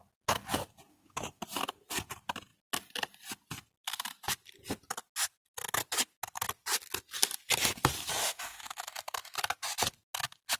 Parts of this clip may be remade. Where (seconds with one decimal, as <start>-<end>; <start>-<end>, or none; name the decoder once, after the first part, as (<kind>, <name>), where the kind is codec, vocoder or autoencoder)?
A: 0.9-1.4 (autoencoder, DAC-VAE); 8.2-8.9